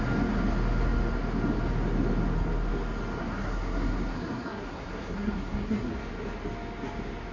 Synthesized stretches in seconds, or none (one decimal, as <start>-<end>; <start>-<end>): 3.2-5.9